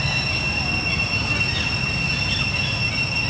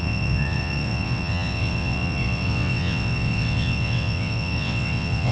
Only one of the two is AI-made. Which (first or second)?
second